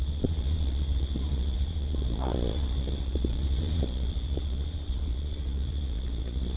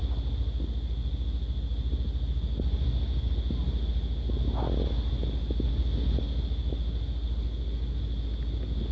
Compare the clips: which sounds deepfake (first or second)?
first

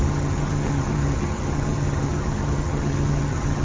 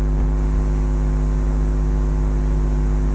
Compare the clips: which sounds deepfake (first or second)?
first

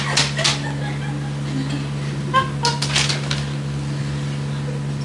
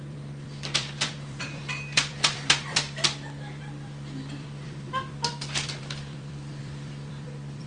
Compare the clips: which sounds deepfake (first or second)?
second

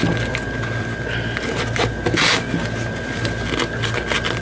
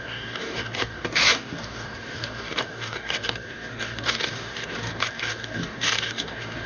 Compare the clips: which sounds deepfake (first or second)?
second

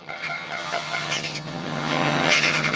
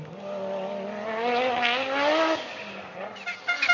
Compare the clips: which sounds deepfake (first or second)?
first